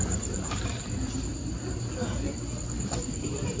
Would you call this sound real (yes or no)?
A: no